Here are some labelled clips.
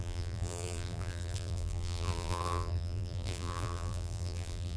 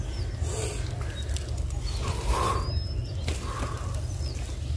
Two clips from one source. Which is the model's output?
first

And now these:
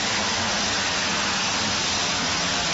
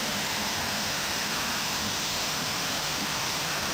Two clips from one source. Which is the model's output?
second